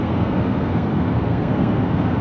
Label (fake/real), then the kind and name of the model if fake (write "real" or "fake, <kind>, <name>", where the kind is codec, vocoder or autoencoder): fake, codec, SNAC